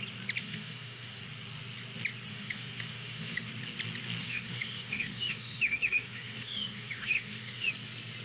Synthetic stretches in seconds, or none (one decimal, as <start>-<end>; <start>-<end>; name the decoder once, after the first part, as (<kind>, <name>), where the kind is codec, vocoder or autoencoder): 0.4-1.2 (autoencoder, DAC-VAE); 2.3-3.5; 4.2-7.7